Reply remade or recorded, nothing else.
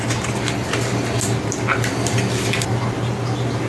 recorded